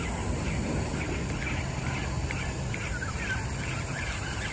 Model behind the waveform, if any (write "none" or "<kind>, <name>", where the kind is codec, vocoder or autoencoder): none